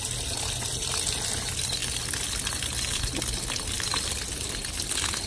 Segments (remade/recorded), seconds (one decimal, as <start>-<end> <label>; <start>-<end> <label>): 0.0-5.3 recorded